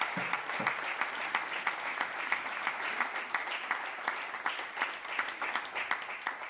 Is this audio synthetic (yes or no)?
no